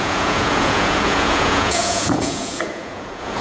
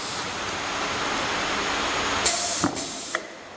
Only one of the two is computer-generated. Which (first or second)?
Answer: first